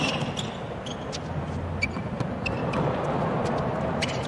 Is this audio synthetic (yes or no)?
no